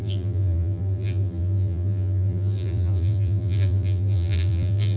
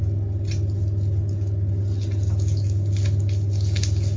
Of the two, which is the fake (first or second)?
first